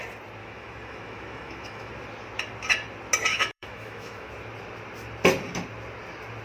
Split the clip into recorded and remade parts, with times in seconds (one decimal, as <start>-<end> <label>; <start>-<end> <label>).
0.0-0.4 recorded; 0.4-1.9 remade; 1.9-3.3 recorded; 3.3-4.3 remade; 4.3-6.4 recorded